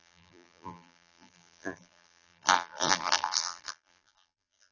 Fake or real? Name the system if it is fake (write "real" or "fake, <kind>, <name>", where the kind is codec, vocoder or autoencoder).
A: fake, vocoder, BigVGAN v2